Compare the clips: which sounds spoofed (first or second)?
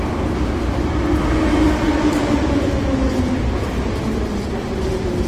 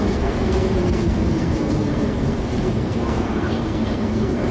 second